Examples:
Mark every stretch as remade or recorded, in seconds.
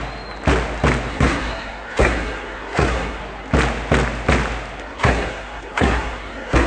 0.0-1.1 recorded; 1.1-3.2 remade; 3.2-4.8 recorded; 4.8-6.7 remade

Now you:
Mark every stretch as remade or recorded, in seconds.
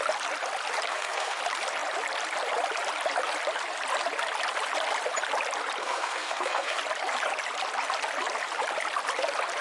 0.0-0.9 recorded; 0.9-1.4 remade; 1.4-5.8 recorded; 5.8-6.8 remade; 6.8-9.6 recorded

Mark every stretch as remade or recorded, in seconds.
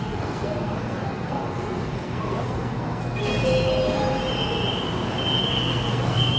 0.0-3.3 remade; 3.3-5.4 recorded; 5.4-6.4 remade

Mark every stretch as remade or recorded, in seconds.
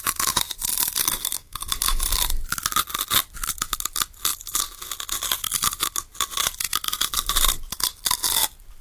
0.0-1.0 recorded; 1.0-1.7 remade; 1.7-8.8 recorded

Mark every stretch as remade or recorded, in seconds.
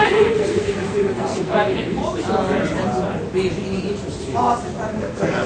0.0-2.0 remade; 2.0-4.9 recorded; 4.9-5.5 remade